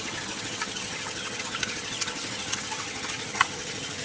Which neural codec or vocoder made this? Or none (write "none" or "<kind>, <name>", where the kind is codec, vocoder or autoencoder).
vocoder, HiFi-GAN